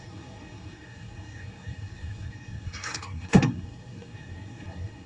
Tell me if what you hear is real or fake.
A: fake